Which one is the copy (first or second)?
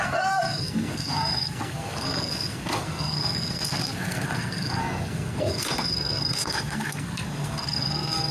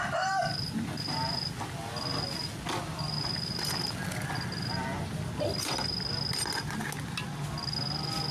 first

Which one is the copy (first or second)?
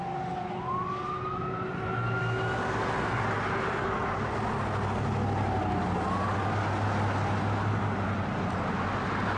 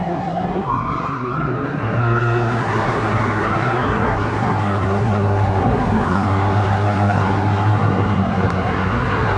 second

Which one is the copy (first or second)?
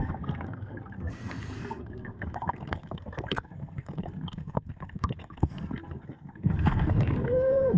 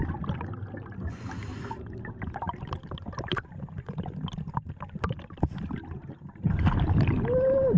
first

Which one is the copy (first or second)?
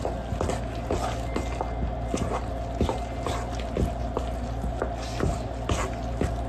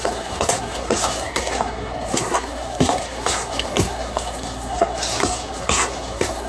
second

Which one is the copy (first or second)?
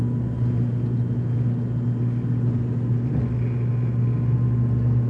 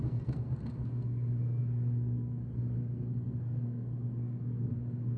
second